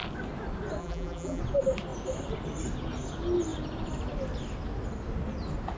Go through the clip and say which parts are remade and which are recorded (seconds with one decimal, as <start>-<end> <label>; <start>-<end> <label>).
0.0-0.8 recorded; 0.8-1.4 remade; 1.4-5.8 recorded